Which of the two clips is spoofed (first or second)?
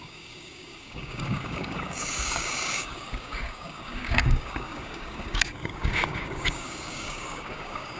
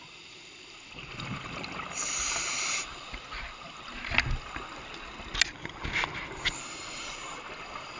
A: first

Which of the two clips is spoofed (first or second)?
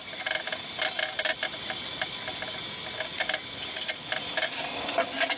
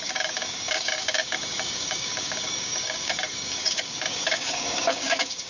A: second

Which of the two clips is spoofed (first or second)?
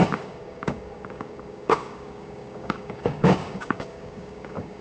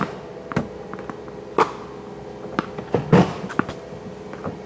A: first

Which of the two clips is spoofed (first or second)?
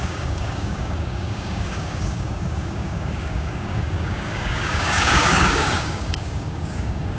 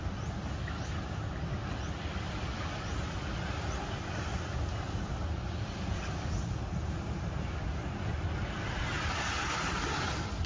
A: first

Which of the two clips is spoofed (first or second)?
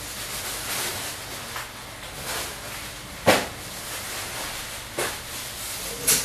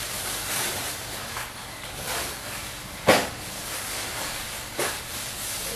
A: second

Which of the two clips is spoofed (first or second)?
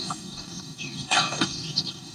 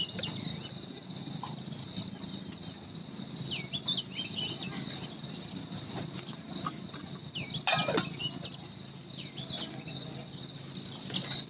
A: first